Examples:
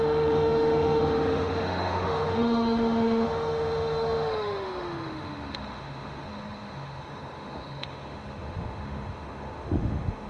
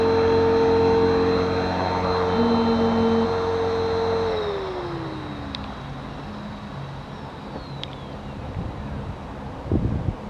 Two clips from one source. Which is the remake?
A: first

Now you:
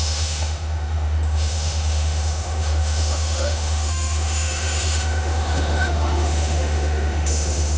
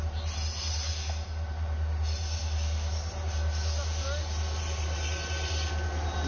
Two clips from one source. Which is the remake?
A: first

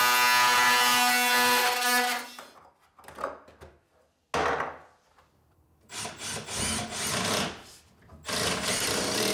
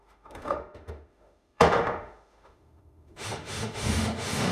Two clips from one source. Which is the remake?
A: second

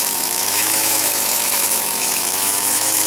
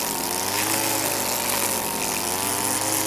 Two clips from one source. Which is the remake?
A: first